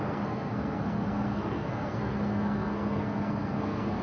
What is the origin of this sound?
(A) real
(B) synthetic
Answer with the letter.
B